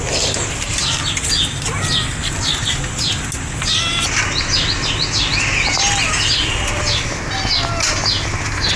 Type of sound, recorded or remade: recorded